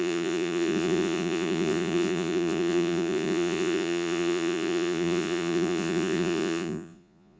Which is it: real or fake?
fake